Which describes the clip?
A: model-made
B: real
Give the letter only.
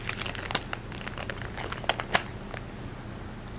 B